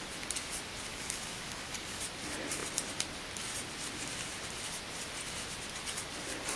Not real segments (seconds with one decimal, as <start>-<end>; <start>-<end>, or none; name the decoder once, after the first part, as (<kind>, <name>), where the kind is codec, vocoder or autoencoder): 0.9-2.0 (codec, DAC)